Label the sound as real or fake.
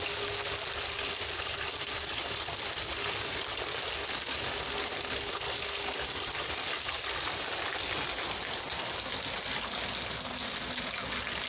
real